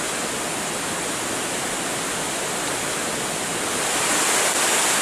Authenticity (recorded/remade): recorded